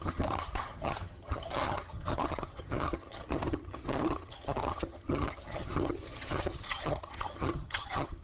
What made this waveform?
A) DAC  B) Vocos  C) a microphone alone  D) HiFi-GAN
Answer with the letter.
D